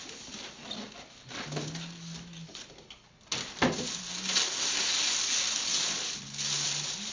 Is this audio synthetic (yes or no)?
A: no